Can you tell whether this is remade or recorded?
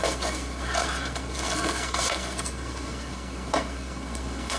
remade